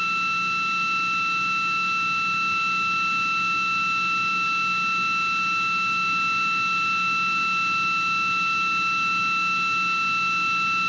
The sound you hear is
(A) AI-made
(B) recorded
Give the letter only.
B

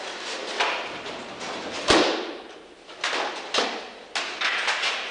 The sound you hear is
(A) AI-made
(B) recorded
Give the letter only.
B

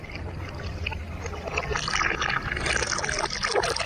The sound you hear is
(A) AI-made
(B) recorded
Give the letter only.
B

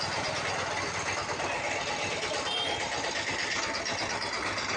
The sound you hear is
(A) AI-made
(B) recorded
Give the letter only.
B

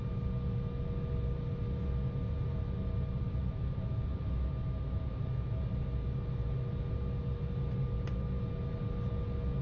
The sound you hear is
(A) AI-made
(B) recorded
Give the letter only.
B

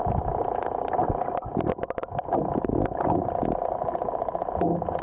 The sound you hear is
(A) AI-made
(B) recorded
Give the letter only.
B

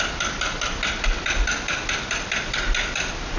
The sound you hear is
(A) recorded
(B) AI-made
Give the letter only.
A